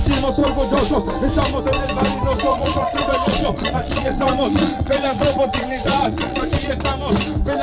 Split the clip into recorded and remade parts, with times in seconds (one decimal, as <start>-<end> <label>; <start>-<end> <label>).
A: 0.0-2.5 recorded; 2.5-6.7 remade; 6.7-7.6 recorded